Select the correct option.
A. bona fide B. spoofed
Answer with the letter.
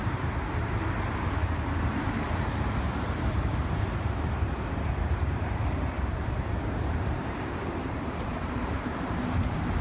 B